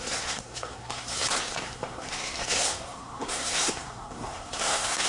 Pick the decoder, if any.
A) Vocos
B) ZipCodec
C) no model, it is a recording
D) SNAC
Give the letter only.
D